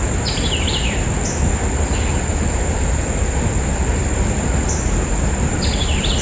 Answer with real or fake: real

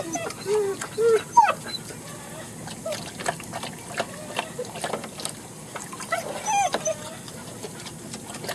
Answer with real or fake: real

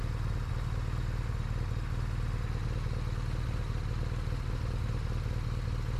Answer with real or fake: real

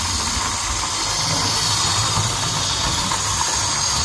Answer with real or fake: real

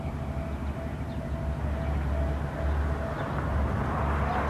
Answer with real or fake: real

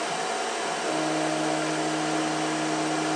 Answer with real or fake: real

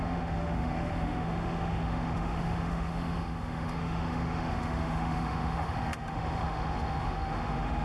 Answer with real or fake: fake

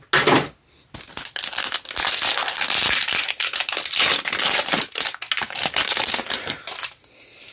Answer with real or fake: real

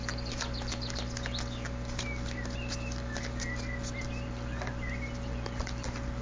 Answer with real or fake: real